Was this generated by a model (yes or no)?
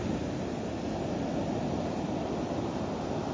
no